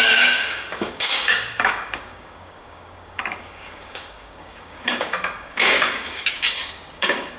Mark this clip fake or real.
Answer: fake